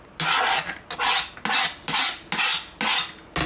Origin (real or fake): real